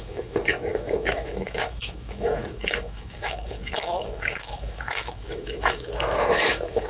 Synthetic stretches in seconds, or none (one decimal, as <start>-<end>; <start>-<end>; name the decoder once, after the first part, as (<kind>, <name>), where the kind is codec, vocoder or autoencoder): 0.0-6.9 (autoencoder, DAC-VAE)